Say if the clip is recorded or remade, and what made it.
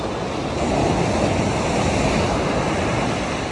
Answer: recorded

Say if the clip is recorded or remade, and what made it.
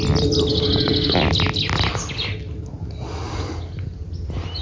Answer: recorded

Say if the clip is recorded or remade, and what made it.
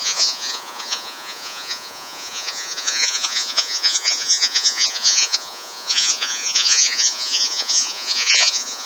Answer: remade, vocoder, Vocos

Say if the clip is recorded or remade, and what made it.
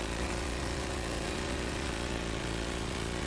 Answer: remade, vocoder, Vocos